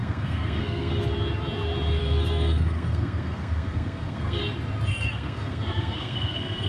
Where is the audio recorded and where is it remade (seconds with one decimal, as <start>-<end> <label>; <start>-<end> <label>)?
0.0-0.9 remade; 0.9-2.0 recorded; 2.0-4.4 remade; 4.4-4.9 recorded; 4.9-6.7 remade